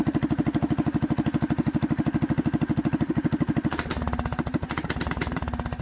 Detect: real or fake real